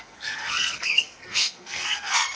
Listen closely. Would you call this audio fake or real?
fake